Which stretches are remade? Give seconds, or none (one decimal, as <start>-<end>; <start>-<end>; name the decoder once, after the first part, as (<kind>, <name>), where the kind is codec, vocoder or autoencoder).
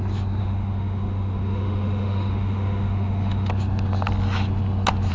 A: 0.4-3.5 (autoencoder, DAC-VAE)